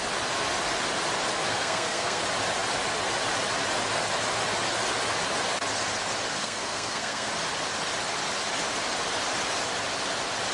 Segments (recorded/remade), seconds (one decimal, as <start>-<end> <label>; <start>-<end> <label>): 0.0-1.5 recorded; 1.5-2.2 remade; 2.2-6.4 recorded; 6.4-7.3 remade; 7.3-10.5 recorded